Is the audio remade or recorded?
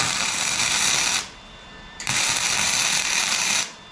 remade